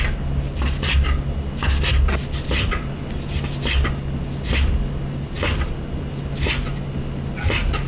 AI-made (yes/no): no